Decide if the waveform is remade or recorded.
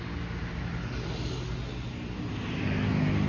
recorded